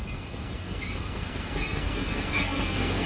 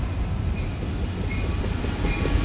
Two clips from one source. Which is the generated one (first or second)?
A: first